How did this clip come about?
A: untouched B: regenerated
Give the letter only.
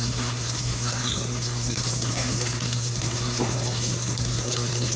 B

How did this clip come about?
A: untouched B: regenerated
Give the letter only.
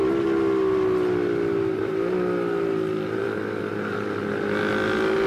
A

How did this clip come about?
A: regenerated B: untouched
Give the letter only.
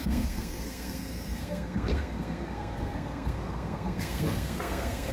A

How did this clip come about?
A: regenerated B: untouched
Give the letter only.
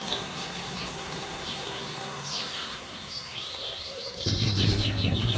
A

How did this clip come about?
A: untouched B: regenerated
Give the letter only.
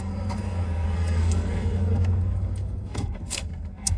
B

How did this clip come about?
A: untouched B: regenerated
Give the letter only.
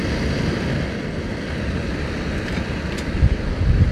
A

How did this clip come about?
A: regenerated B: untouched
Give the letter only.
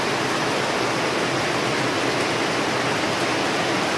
B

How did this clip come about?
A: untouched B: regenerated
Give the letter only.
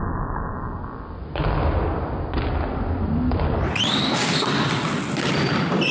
A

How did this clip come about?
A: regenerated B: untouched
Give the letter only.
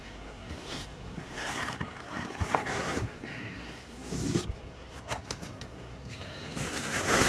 A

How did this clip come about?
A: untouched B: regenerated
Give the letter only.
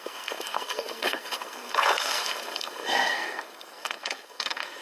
B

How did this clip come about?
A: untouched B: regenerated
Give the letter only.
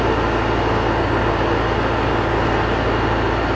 A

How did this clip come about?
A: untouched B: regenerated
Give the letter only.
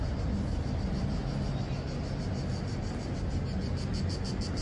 A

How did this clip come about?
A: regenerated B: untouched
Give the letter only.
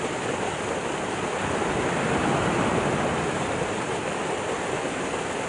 B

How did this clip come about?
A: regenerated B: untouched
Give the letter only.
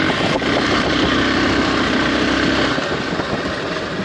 B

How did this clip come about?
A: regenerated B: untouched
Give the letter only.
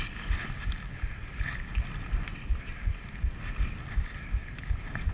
B